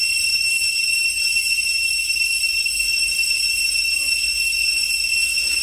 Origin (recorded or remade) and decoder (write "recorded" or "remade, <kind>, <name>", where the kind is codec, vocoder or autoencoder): recorded